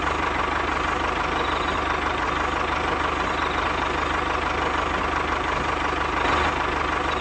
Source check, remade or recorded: recorded